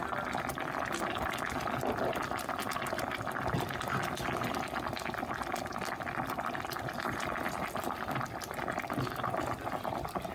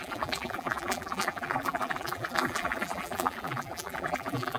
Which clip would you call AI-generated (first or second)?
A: second